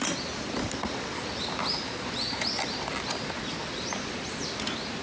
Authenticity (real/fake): real